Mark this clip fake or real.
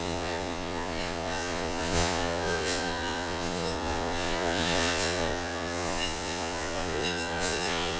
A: fake